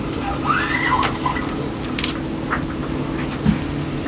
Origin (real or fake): real